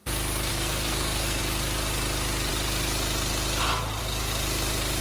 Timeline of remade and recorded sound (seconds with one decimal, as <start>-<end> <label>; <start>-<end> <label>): 0.0-0.5 recorded; 0.5-1.4 remade; 1.4-5.0 recorded